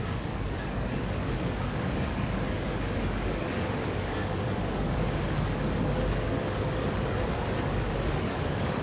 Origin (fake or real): fake